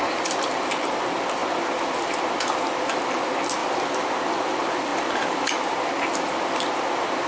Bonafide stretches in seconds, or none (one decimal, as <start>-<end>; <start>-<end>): 0.0-3.6; 4.3-4.9; 5.5-7.3

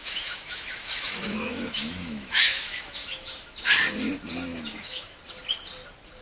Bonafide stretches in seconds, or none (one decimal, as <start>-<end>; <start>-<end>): 3.7-4.5; 5.2-6.2

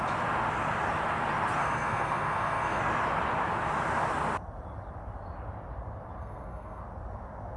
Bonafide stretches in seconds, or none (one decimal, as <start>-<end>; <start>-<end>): 0.0-1.6; 2.8-6.2; 6.8-7.6

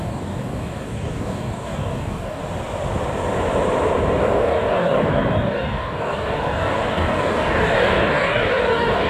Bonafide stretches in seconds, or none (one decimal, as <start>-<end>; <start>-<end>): 2.4-4.2

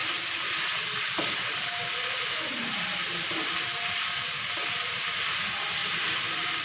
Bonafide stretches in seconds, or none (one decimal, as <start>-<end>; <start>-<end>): 4.0-5.8

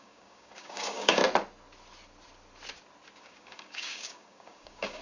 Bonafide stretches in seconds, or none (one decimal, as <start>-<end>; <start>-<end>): 1.2-3.2

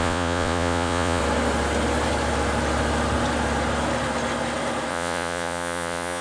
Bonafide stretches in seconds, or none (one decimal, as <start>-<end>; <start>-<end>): 1.2-4.9